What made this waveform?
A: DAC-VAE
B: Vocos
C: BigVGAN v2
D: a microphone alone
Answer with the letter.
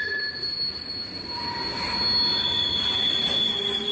D